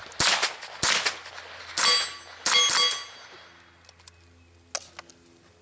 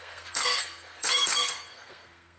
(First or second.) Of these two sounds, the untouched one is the first